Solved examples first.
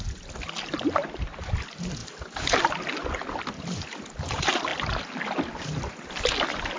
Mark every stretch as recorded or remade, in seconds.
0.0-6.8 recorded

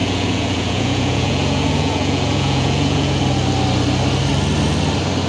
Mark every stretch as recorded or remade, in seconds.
0.0-3.2 remade; 3.2-5.3 recorded

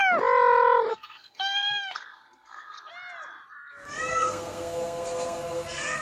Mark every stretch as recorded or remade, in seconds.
0.0-0.9 recorded; 0.9-2.9 remade; 2.9-4.1 recorded; 4.1-6.0 remade